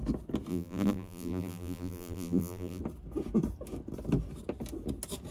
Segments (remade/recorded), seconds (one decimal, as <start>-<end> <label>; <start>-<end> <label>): 0.0-0.5 recorded; 0.5-2.8 remade; 2.8-5.3 recorded